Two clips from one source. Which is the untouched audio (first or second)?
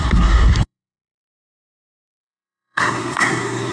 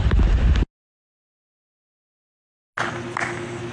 second